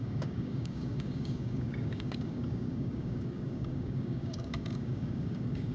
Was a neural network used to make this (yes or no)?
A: yes